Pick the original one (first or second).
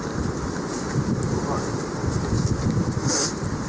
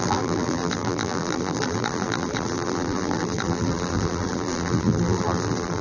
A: first